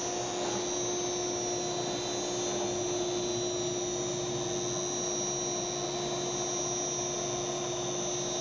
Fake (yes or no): no